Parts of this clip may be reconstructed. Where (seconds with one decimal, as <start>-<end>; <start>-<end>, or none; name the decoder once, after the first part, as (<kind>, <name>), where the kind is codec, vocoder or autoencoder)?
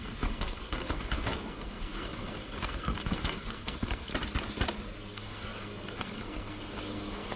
0.0-4.1 (codec, SNAC); 5.0-7.4